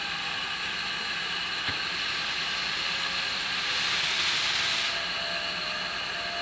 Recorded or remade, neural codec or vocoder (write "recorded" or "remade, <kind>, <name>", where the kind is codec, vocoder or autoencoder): recorded